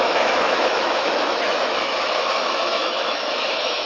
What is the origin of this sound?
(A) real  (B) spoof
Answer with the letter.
B